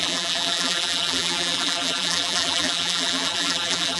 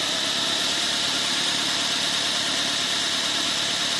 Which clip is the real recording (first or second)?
second